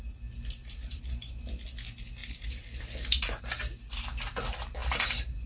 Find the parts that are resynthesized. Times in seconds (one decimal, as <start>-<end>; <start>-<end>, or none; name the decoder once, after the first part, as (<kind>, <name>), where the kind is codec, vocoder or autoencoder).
0.6-1.3 (vocoder, BigVGAN v2); 2.2-3.4; 4.8-5.5

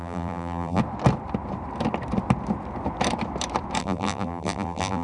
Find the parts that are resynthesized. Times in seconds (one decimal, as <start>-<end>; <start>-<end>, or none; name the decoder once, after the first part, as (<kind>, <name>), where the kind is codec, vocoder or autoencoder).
0.0-0.8 (vocoder, BigVGAN v2); 3.8-5.0

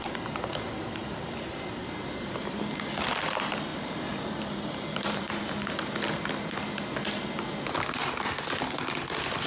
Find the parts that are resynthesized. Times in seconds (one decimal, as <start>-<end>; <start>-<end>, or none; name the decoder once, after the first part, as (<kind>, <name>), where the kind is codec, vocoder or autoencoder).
1.0-1.5 (vocoder, BigVGAN v2); 3.7-5.7

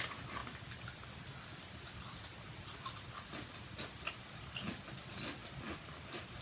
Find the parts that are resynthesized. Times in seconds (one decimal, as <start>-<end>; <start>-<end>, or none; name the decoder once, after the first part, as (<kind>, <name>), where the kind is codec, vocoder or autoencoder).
5.4-6.4 (vocoder, BigVGAN v2)

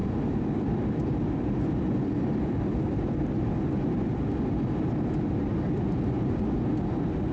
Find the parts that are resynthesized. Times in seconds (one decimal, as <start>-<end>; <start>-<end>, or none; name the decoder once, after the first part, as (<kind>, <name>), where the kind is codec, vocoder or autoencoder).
0.0-4.2 (vocoder, BigVGAN v2)